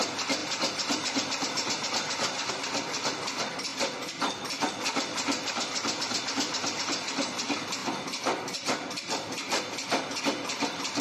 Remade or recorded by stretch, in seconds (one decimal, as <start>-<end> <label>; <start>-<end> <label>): 0.0-7.8 remade; 7.8-10.2 recorded; 10.2-11.0 remade